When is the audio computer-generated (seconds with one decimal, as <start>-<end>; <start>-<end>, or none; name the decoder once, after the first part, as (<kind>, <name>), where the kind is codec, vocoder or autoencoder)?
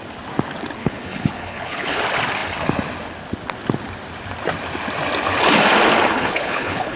0.8-2.0 (codec, HILCodec); 6.2-7.0